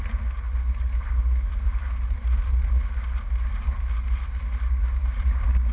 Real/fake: real